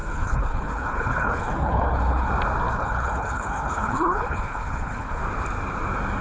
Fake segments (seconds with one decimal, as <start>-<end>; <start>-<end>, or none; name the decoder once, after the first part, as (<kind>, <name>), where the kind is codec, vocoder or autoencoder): 0.0-2.3 (codec, HILCodec); 2.7-5.2